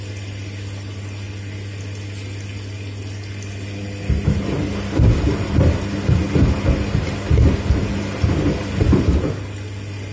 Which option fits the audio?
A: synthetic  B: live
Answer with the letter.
B